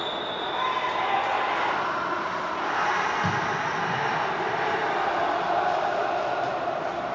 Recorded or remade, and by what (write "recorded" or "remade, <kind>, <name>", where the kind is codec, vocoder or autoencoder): recorded